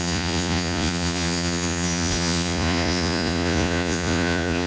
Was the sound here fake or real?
fake